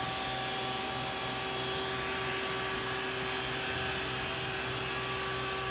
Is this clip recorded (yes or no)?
yes